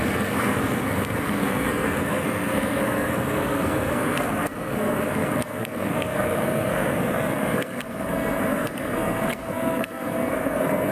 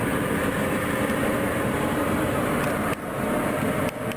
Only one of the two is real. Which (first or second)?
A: second